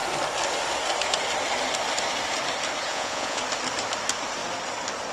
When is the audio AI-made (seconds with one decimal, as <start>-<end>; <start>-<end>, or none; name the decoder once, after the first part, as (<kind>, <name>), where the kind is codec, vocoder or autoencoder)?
2.9-3.4 (vocoder, Vocos)

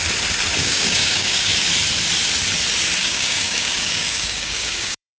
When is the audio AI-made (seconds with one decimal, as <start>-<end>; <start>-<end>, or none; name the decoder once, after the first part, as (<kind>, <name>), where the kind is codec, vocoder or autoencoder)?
0.6-1.7 (codec, DAC); 3.0-5.2

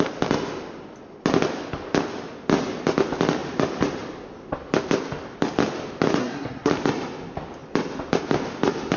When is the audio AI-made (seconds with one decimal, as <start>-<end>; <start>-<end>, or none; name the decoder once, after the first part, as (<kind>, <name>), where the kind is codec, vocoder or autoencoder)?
6.2-6.7 (codec, SNAC)

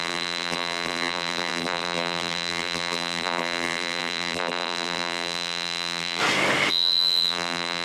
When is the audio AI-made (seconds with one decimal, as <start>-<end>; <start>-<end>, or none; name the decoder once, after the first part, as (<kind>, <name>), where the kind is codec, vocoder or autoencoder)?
0.0-6.2 (vocoder, BigVGAN v2); 6.7-7.8

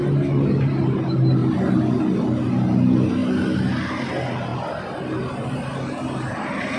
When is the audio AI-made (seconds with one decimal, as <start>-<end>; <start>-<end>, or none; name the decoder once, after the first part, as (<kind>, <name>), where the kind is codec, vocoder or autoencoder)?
none

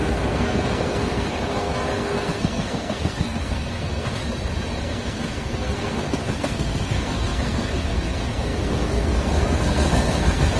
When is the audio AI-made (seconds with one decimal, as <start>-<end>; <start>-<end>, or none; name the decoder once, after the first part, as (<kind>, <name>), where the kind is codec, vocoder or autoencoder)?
0.0-4.2 (codec, SNAC); 4.8-10.6

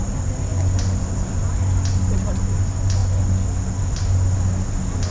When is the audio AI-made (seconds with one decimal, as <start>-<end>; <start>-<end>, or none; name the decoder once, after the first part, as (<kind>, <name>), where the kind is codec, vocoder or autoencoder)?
none